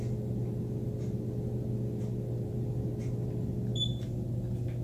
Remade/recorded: recorded